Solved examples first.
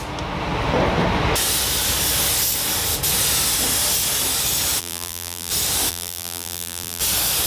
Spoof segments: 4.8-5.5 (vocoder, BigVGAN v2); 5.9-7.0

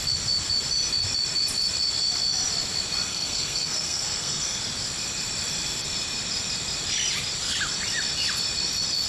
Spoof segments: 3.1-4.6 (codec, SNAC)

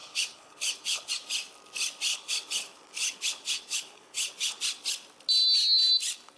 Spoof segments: 0.0-1.1 (codec, HILCodec); 2.1-4.6